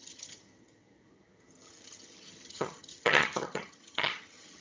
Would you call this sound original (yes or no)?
no